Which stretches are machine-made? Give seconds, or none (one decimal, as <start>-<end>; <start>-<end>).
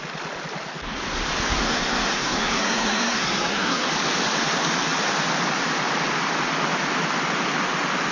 1.6-3.9